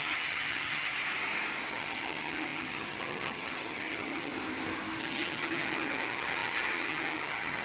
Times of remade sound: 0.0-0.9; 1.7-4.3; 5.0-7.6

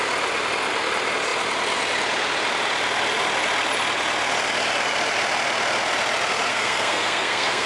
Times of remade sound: 6.5-7.7

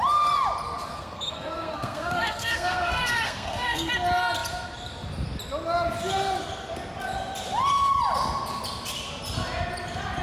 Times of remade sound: 0.9-3.9